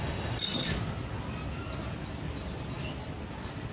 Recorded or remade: recorded